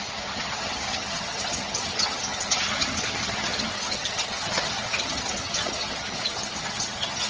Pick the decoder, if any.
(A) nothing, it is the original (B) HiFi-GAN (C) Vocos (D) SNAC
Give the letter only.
B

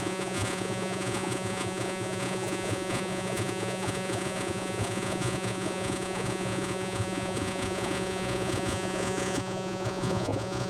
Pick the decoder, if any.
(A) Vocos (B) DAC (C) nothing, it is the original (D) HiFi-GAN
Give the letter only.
A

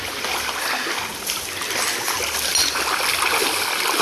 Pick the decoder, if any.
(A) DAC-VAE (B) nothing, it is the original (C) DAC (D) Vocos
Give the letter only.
B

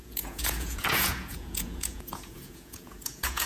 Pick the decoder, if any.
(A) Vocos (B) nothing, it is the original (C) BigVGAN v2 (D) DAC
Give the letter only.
A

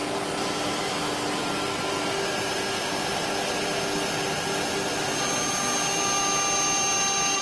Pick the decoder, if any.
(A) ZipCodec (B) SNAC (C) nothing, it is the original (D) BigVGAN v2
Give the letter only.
C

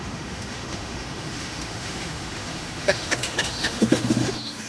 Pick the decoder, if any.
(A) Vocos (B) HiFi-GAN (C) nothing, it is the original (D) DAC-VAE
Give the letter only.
D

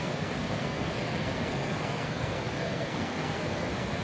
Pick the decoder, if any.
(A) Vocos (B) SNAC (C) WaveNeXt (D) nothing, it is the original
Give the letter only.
B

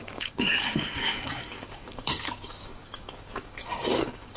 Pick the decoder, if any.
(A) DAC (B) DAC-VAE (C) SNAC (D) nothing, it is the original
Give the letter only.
A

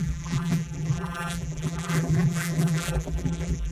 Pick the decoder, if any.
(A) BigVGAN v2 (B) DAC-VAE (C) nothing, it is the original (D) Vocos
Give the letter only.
A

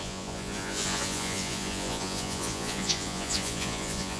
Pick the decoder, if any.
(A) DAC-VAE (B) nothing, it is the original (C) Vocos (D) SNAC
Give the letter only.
C